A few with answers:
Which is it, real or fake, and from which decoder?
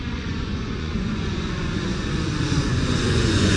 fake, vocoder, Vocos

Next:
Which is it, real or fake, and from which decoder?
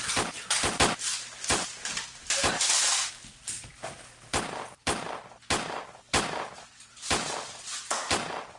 fake, vocoder, BigVGAN v2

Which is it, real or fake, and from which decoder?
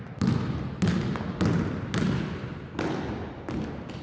real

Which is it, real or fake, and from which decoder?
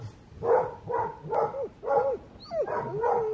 real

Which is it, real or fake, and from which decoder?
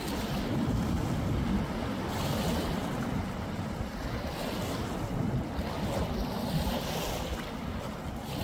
real